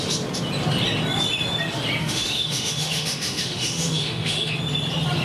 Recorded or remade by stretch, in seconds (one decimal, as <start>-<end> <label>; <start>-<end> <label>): 0.0-2.0 recorded; 2.0-4.5 remade; 4.5-5.2 recorded

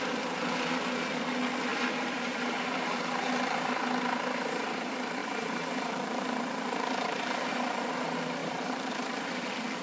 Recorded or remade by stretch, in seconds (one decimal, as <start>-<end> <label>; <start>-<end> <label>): 0.0-1.7 recorded; 1.7-3.3 remade; 3.3-5.2 recorded; 5.2-7.9 remade; 7.9-8.4 recorded; 8.4-8.9 remade; 8.9-9.8 recorded

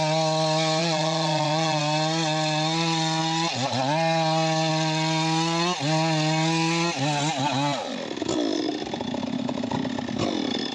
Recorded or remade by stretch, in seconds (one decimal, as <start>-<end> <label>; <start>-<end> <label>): 0.0-0.8 recorded; 0.8-1.8 remade; 1.8-10.7 recorded

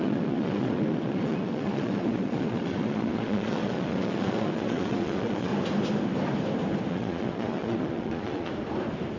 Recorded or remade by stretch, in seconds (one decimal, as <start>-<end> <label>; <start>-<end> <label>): 0.0-5.5 remade; 5.5-6.9 recorded; 6.9-8.5 remade; 8.5-9.2 recorded

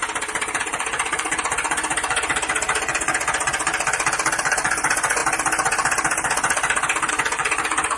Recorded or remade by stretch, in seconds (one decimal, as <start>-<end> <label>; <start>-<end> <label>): 0.0-0.6 recorded; 0.6-3.7 remade; 3.7-4.4 recorded; 4.4-5.2 remade; 5.2-7.1 recorded; 7.1-8.0 remade

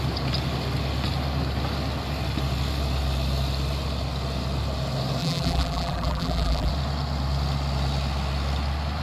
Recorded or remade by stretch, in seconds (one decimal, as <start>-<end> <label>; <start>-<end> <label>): 0.0-5.2 recorded; 5.2-6.7 remade; 6.7-9.0 recorded

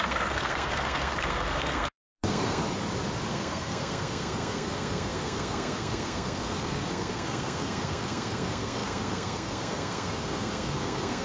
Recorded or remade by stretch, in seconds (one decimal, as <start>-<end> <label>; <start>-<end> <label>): 0.0-2.6 remade; 2.6-3.3 recorded; 3.3-11.2 remade

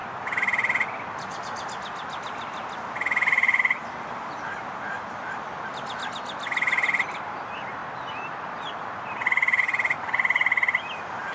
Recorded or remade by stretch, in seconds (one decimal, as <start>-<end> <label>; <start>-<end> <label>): 0.0-11.3 recorded